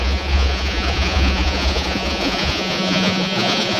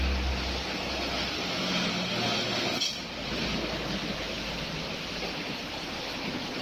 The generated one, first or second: first